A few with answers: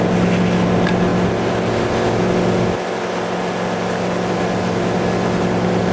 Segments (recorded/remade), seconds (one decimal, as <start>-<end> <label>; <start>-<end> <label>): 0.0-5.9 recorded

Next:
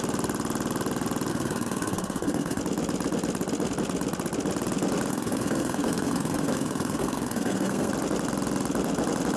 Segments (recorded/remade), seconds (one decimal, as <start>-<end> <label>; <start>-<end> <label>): 0.0-1.3 recorded; 1.3-2.6 remade; 2.6-5.1 recorded; 5.1-7.9 remade; 7.9-9.4 recorded

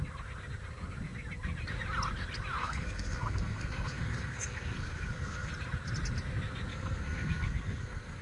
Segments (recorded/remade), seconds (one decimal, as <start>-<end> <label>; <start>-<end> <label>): 0.0-2.6 recorded; 2.6-5.5 remade; 5.5-6.7 recorded; 6.7-8.2 remade

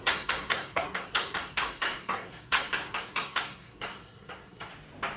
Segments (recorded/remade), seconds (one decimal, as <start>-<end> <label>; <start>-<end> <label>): 0.0-4.7 remade; 4.7-5.2 recorded

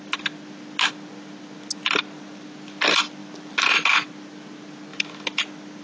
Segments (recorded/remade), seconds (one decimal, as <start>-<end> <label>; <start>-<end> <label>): 0.0-5.8 recorded

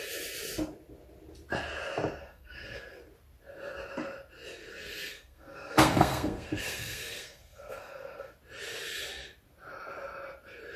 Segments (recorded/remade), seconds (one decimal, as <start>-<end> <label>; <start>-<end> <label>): 0.0-2.2 recorded; 2.2-3.0 remade; 3.0-4.7 recorded; 4.7-8.3 remade; 8.3-10.8 recorded

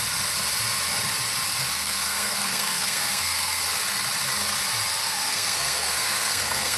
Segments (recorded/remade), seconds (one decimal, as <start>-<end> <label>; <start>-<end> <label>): 0.0-1.7 recorded; 1.7-3.6 remade; 3.6-5.0 recorded; 5.0-6.8 remade